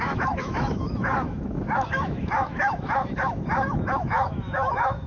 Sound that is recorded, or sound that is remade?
remade